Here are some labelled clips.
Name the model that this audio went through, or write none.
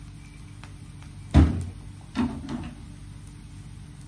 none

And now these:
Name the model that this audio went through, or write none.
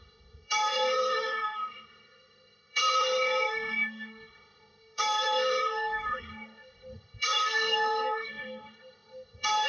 autoencoder, DAC-VAE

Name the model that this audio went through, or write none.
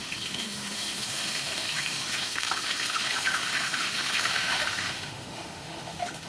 autoencoder, DAC-VAE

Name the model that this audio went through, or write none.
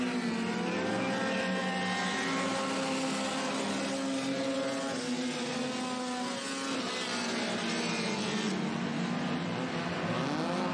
none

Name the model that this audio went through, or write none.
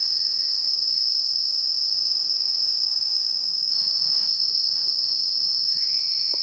autoencoder, DAC-VAE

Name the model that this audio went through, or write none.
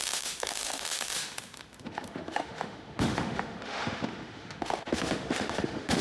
autoencoder, DAC-VAE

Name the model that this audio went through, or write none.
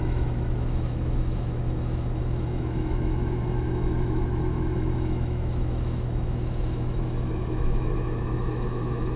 autoencoder, DAC-VAE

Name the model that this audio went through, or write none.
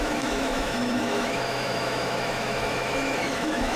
autoencoder, DAC-VAE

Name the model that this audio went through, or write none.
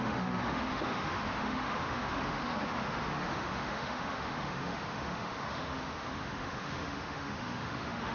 autoencoder, DAC-VAE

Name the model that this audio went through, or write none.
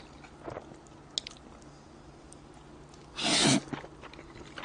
none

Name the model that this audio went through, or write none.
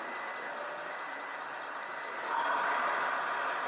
none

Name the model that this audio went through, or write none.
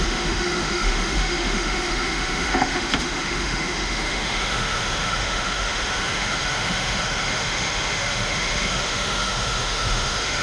autoencoder, DAC-VAE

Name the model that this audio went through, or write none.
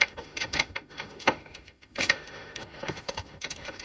autoencoder, DAC-VAE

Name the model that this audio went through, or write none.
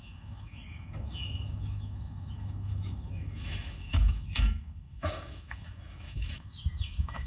autoencoder, DAC-VAE